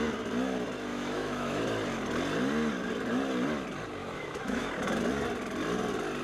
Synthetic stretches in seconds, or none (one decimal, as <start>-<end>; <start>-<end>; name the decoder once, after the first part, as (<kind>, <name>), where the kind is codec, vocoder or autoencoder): 0.9-1.6 (autoencoder, DAC-VAE); 4.0-4.7